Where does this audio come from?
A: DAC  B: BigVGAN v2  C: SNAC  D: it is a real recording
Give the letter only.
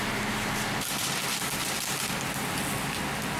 D